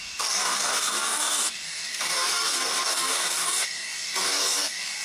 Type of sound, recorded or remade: remade